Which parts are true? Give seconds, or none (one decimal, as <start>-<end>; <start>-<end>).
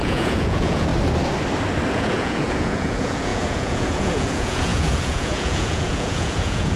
0.9-1.9